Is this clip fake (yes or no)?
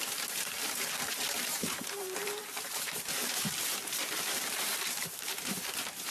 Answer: yes